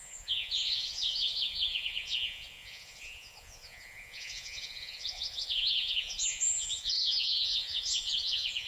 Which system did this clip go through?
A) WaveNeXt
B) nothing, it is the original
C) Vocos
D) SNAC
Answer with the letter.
C